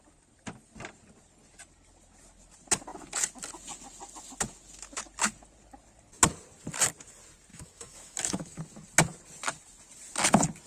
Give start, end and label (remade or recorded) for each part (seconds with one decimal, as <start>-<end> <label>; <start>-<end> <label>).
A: 0.0-7.5 recorded; 7.5-8.6 remade; 8.6-10.7 recorded